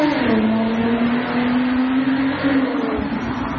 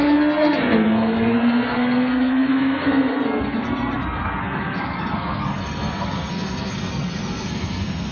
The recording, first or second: first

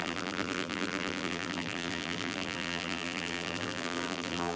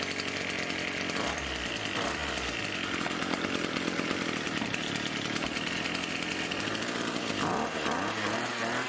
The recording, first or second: second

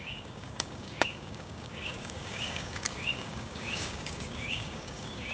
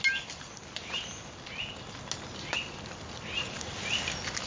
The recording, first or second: second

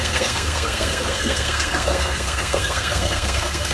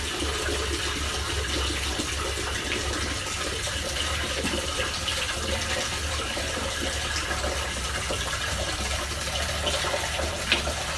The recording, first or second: second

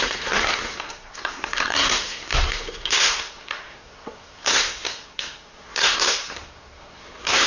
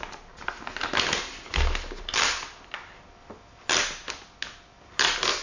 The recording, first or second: second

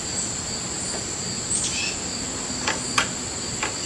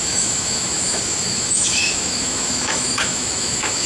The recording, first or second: first